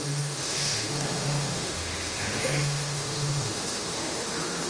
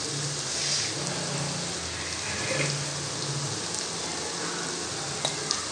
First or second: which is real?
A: second